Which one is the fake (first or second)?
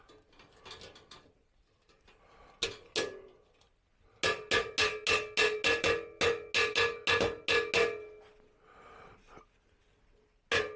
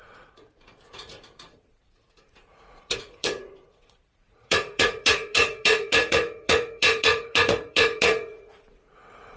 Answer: second